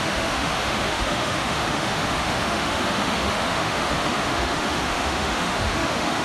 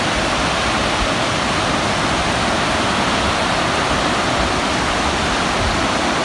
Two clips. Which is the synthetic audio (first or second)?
first